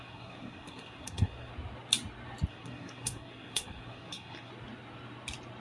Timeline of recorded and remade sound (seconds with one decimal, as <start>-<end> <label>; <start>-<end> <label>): 0.0-1.5 remade; 1.5-2.5 recorded; 2.5-4.5 remade; 4.5-5.6 recorded

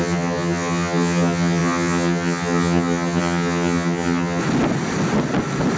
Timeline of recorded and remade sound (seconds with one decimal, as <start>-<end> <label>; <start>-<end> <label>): 0.0-4.4 remade; 4.4-5.8 recorded

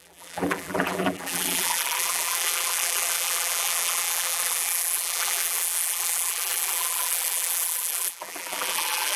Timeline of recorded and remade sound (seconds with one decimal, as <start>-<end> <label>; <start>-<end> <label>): 0.0-9.2 remade